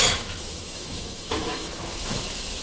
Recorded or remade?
remade